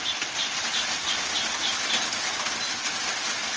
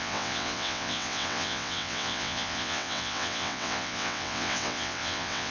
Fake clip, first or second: second